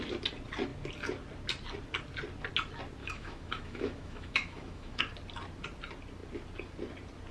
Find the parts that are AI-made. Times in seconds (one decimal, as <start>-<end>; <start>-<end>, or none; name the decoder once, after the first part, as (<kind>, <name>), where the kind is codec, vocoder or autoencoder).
3.0-5.0 (autoencoder, DAC-VAE)